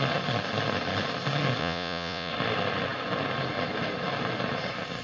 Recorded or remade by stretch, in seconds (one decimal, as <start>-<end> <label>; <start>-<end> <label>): 0.0-1.6 recorded; 1.6-2.3 remade; 2.3-5.0 recorded